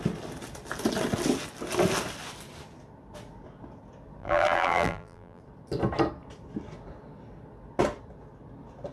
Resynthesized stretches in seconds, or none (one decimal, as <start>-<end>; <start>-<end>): 4.2-5.4